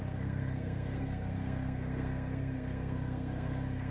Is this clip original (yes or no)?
no